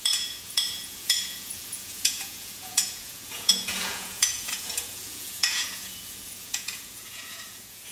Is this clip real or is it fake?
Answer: fake